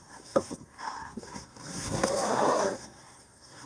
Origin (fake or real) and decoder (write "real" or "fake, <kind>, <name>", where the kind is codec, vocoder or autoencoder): fake, codec, SNAC